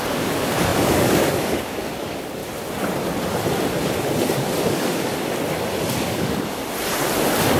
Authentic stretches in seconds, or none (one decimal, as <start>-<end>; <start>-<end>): 2.4-4.6; 5.1-6.0; 6.6-7.6